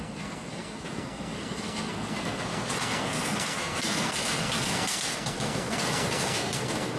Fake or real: fake